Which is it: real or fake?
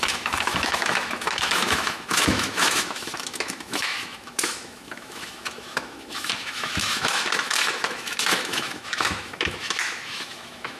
fake